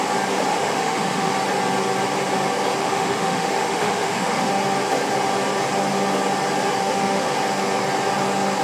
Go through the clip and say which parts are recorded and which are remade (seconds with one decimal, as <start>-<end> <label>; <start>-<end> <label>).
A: 0.0-0.5 recorded; 0.5-1.3 remade; 1.3-2.8 recorded; 2.8-4.5 remade; 4.5-6.8 recorded; 6.8-7.3 remade; 7.3-8.6 recorded